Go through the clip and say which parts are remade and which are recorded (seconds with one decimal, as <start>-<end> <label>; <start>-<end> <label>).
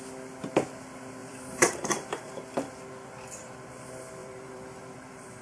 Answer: 0.0-1.2 recorded; 1.2-2.3 remade; 2.3-4.2 recorded; 4.2-5.4 remade